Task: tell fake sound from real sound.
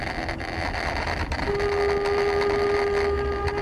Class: real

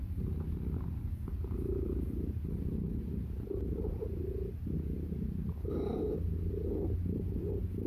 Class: real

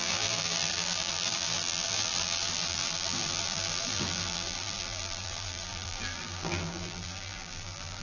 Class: fake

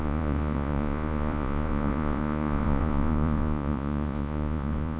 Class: fake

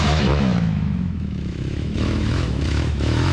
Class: fake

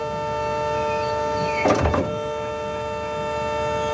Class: real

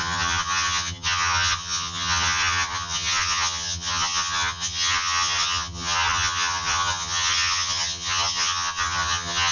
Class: fake